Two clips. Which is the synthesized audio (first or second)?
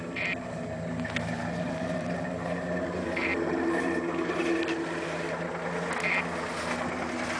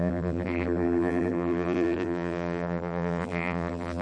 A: second